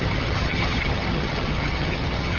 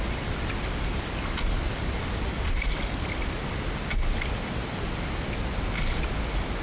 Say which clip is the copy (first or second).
first